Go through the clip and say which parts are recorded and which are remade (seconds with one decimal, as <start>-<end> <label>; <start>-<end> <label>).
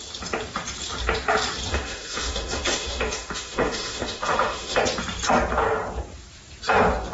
0.0-1.7 recorded; 1.7-4.8 remade; 4.8-7.1 recorded